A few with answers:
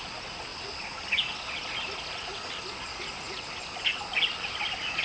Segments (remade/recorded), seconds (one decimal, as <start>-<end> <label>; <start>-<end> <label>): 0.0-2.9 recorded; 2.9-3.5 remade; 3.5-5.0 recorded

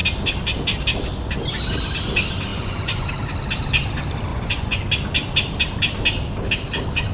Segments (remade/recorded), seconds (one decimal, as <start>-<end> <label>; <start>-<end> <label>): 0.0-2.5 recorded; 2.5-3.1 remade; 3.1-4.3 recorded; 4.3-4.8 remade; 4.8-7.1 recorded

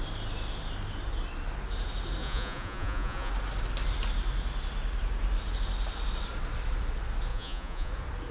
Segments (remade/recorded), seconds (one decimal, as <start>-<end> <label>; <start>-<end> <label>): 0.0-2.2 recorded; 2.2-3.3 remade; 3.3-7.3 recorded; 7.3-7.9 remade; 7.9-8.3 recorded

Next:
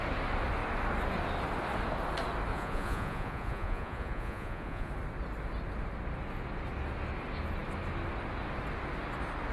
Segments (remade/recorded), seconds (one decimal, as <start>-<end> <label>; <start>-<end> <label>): 0.0-2.5 recorded; 2.5-4.9 remade; 4.9-9.5 recorded

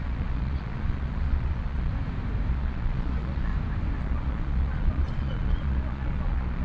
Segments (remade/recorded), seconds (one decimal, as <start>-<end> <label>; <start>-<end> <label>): 0.0-1.9 remade; 1.9-2.5 recorded; 2.5-3.5 remade; 3.5-4.0 recorded; 4.0-6.6 remade